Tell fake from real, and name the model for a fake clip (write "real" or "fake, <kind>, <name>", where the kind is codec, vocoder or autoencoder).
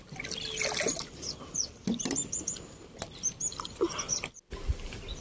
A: real